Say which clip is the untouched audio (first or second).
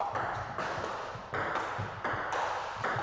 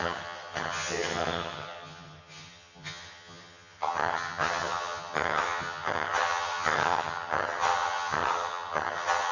first